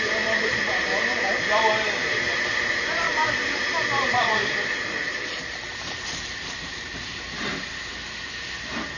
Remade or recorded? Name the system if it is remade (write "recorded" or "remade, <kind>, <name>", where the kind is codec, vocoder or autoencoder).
remade, vocoder, BigVGAN v2